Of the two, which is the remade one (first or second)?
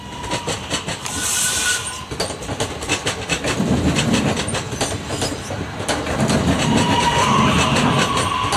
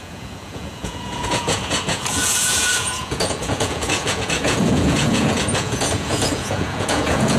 second